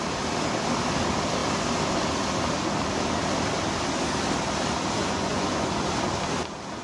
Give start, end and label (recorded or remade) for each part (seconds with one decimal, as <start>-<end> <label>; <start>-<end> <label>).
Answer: 0.0-5.0 recorded; 5.0-5.8 remade; 5.8-6.8 recorded